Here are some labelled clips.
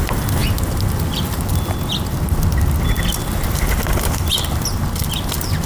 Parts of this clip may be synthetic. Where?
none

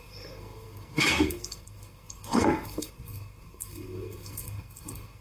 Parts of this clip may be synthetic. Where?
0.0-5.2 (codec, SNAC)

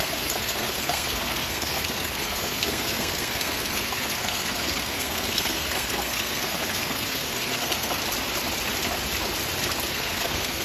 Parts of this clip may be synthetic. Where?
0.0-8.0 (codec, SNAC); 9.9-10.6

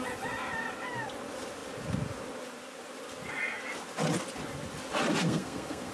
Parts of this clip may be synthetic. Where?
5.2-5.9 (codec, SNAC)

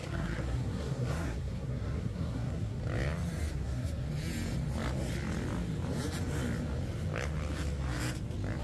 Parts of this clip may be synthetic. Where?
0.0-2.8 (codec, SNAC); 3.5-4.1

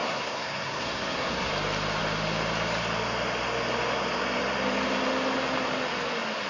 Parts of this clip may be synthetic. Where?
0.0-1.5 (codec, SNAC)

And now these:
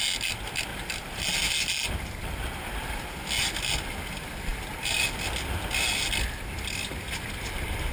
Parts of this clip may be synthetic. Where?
none

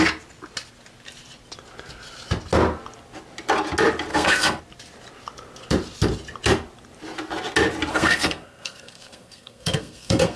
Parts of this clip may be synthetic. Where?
4.1-4.6 (codec, SNAC); 7.9-10.4